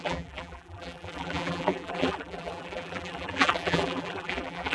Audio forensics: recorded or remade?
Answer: remade